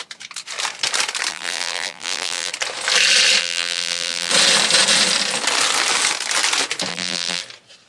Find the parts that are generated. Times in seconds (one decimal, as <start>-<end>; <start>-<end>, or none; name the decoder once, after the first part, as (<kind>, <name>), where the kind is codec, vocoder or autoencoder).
1.3-2.5 (vocoder, BigVGAN v2); 3.4-4.3; 6.9-7.4